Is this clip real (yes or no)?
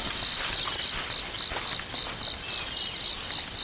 yes